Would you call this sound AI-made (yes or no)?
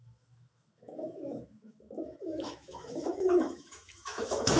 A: yes